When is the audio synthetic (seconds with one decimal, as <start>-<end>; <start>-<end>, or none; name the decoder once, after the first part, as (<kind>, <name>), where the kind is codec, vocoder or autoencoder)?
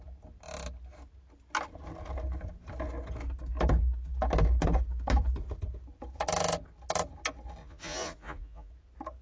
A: 7.6-8.7 (vocoder, Vocos)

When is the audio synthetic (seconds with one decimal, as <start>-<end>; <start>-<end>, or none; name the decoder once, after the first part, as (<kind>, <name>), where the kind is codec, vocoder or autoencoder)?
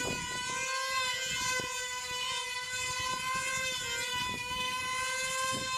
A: 4.1-4.8 (autoencoder, DAC-VAE)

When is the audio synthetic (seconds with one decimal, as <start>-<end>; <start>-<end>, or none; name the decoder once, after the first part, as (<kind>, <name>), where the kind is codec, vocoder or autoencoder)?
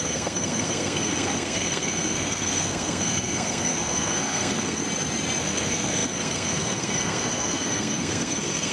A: 0.0-4.8 (codec, SNAC); 5.4-8.7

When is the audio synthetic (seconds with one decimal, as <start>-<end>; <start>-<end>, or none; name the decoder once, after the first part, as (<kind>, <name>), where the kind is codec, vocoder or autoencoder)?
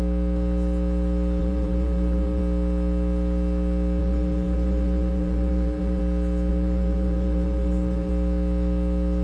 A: 1.4-2.4 (vocoder, BigVGAN v2); 4.0-6.0; 6.5-8.1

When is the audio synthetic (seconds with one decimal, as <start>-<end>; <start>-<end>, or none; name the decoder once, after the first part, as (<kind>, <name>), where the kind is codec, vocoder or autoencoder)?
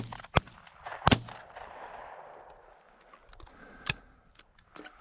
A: none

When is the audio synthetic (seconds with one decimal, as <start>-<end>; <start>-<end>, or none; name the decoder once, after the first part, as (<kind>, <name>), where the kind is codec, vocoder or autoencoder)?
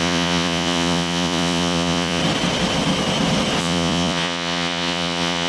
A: 0.0-2.2 (vocoder, Vocos); 3.6-5.5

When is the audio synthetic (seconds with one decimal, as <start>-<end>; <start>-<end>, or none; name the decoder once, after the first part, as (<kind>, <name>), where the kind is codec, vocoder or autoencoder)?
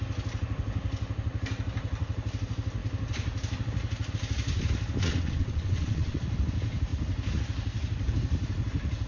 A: 5.0-6.2 (vocoder, WaveNeXt)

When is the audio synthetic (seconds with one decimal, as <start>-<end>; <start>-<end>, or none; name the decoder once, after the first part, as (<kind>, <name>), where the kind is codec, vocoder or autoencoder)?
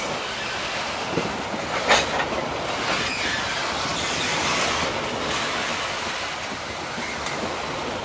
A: 3.9-4.7 (vocoder, BigVGAN v2); 5.7-7.5